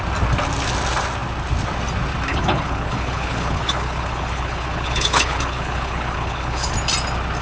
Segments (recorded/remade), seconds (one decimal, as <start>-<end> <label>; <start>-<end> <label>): 0.0-2.3 recorded; 2.3-6.7 remade; 6.7-7.4 recorded